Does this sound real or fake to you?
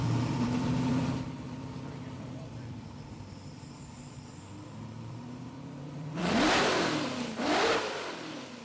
fake